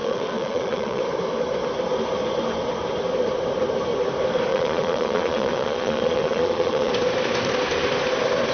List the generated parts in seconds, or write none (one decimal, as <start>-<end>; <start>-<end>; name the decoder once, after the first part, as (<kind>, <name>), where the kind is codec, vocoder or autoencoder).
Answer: 0.0-1.0 (vocoder, Vocos); 4.5-6.9